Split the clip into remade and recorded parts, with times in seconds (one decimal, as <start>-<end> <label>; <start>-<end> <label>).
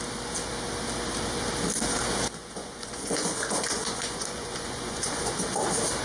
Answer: 0.0-2.4 recorded; 2.4-5.3 remade; 5.3-6.0 recorded